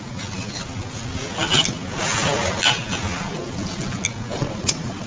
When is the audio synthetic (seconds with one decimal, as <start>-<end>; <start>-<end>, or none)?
4.4-5.1